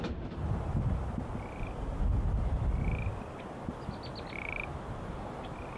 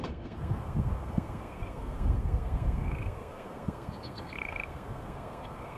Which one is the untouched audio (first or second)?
first